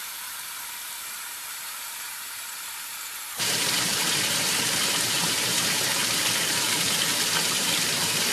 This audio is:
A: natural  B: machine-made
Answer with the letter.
B